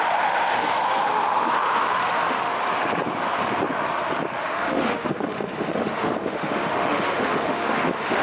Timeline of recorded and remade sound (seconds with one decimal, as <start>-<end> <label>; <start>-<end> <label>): 0.0-2.5 remade; 2.5-4.4 recorded; 4.4-8.2 remade